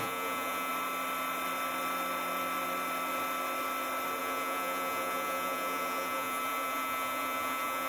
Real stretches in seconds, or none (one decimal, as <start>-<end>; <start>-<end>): 0.7-4.2